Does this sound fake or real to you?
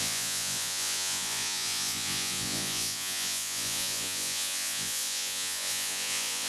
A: fake